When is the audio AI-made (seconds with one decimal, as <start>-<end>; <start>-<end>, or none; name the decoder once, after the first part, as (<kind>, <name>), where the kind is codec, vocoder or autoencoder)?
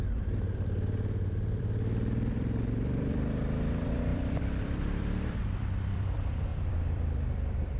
0.0-7.8 (vocoder, BigVGAN v2)